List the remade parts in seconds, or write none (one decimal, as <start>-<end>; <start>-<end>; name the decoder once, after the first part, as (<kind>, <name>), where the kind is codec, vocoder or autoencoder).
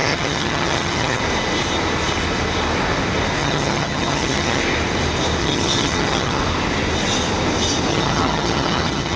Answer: 0.0-1.2 (vocoder, HiFi-GAN); 3.4-4.6; 5.4-6.4; 7.9-9.2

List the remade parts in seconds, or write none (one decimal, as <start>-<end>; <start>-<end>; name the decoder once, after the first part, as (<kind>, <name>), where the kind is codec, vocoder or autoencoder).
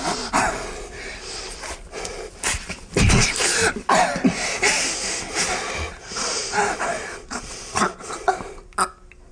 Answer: 7.1-8.3 (vocoder, Vocos)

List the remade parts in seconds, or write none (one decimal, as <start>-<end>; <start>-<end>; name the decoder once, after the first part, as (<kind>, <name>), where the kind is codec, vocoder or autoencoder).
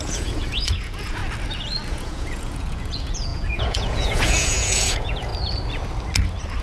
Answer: 0.0-1.2 (vocoder, Vocos); 1.9-5.3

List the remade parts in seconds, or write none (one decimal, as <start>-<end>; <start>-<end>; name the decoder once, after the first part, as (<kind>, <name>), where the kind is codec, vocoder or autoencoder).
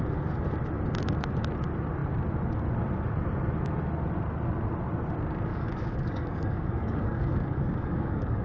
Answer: 5.5-8.4 (codec, DAC)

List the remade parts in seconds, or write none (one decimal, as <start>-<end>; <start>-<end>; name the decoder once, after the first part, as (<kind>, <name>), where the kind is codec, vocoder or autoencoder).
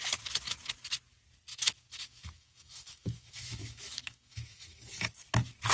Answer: 1.5-4.9 (autoencoder, DAC-VAE)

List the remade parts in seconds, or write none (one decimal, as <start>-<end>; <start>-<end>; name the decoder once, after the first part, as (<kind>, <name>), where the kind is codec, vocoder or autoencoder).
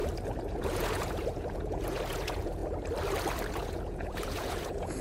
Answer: 0.5-2.6 (vocoder, Vocos); 3.5-5.0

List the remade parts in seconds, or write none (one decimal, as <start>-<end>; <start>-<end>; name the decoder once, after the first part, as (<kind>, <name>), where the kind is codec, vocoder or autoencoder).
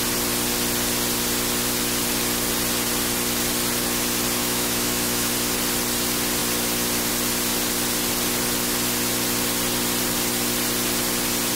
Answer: 4.4-5.3 (autoencoder, DAC-VAE)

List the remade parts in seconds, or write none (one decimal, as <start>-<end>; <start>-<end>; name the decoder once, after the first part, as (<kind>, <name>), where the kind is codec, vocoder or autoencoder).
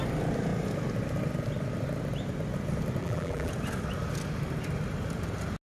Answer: 3.0-3.5 (vocoder, BigVGAN v2)